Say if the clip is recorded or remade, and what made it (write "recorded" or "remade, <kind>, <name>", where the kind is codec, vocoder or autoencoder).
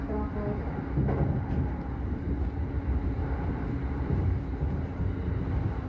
recorded